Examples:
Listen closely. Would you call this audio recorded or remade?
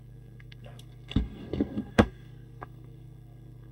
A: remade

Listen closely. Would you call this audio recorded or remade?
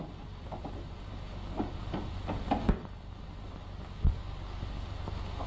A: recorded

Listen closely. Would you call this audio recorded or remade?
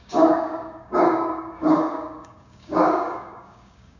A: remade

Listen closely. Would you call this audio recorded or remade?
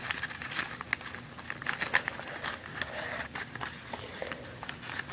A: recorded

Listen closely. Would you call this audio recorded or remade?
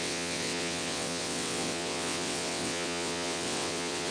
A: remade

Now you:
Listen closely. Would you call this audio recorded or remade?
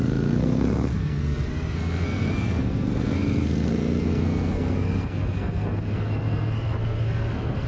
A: remade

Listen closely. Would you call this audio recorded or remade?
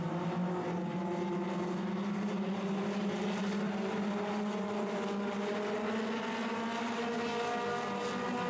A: recorded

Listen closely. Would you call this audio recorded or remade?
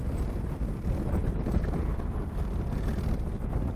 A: recorded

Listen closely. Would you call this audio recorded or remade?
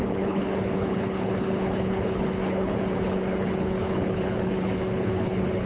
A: remade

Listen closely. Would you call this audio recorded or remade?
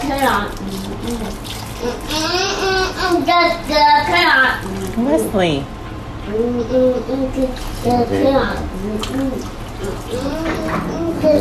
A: recorded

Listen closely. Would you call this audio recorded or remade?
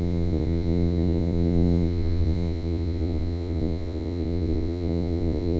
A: remade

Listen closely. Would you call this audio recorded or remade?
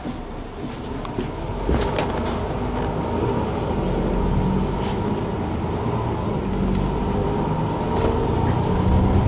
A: recorded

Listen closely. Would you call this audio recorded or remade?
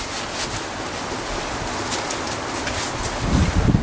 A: recorded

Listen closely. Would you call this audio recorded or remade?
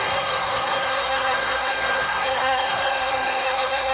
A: remade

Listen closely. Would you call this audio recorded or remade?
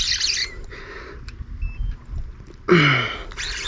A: recorded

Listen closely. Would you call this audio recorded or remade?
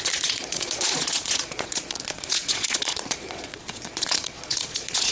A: remade